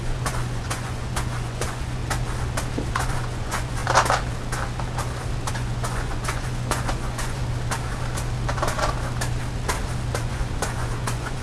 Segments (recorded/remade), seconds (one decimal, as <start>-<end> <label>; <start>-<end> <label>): 0.0-2.0 remade; 2.0-2.9 recorded; 2.9-3.8 remade; 3.8-5.5 recorded; 5.5-7.4 remade; 7.4-10.2 recorded; 10.2-11.4 remade